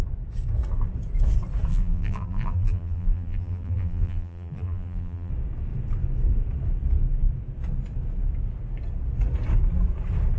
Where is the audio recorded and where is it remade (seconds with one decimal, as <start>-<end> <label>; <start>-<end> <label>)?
0.0-1.7 recorded; 1.7-5.3 remade; 5.3-10.4 recorded